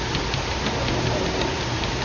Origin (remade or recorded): recorded